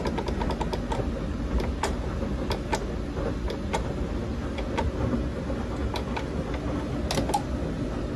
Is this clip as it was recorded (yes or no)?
yes